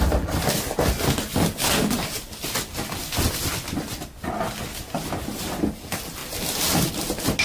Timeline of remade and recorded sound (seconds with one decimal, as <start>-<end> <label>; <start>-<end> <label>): 0.0-7.4 recorded